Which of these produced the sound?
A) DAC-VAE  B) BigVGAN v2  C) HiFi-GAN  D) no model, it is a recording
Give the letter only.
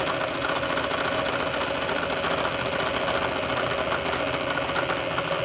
D